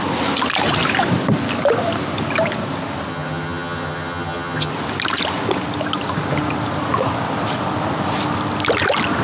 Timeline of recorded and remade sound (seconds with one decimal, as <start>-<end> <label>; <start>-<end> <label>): 0.0-3.1 recorded; 3.1-4.7 remade; 4.7-9.2 recorded